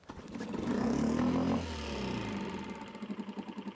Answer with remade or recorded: recorded